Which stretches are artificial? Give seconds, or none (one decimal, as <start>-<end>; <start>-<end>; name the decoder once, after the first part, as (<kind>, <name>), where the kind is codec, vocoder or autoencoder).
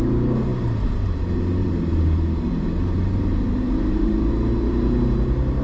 0.5-1.2 (vocoder, BigVGAN v2); 1.6-4.3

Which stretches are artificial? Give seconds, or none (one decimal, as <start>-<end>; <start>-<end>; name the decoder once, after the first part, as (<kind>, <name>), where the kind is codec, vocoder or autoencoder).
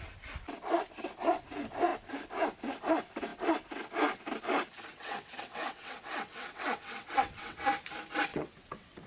4.9-7.6 (vocoder, WaveNeXt); 8.3-9.1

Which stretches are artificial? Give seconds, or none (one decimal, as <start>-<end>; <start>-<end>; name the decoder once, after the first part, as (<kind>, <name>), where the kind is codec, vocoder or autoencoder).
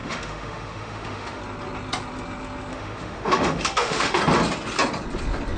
0.0-1.4 (autoencoder, DAC-VAE); 2.7-4.2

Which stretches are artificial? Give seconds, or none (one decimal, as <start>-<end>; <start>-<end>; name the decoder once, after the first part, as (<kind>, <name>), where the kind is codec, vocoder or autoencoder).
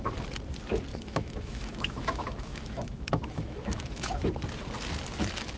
0.9-4.3 (autoencoder, DAC-VAE)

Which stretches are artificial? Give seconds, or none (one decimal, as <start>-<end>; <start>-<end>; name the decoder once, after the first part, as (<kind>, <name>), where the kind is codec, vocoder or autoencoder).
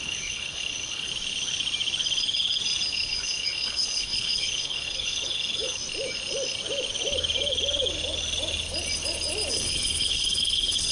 0.0-1.1 (codec, HILCodec); 2.9-5.8; 9.5-10.9